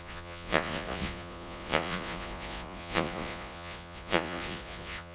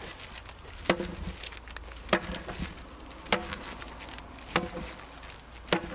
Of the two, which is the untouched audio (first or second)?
second